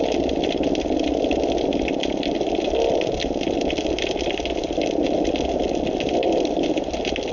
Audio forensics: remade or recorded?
recorded